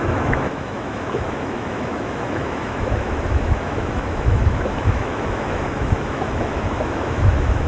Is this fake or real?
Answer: fake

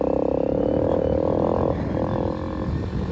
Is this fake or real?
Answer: real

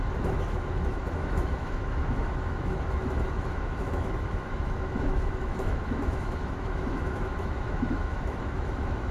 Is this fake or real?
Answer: fake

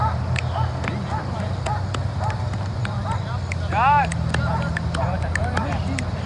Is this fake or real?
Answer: real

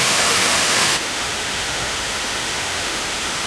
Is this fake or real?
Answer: fake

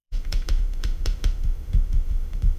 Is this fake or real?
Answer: fake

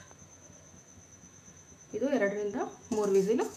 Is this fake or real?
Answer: fake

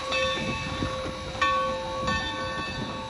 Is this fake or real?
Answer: real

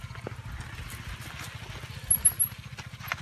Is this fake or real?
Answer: real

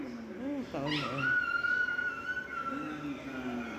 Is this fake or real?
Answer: real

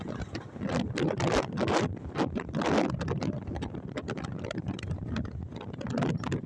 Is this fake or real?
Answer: real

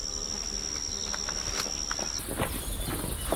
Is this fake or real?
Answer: real